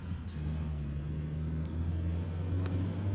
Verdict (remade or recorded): remade